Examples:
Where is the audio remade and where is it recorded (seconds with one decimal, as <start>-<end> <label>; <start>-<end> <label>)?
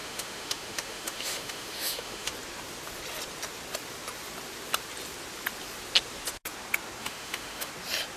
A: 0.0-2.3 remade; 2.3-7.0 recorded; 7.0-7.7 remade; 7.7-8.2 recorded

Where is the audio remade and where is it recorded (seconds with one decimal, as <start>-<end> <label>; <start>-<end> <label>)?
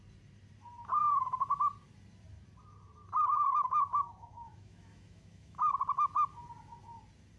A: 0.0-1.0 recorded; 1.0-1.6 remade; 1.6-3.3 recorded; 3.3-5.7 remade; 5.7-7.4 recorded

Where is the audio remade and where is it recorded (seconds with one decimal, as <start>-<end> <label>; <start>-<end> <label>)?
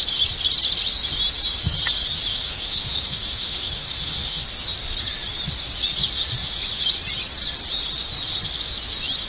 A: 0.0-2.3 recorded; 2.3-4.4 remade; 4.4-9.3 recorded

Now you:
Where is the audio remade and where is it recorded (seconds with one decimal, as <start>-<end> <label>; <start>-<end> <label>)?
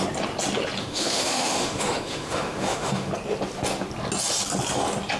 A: 0.0-0.8 recorded; 0.8-3.1 remade; 3.1-5.2 recorded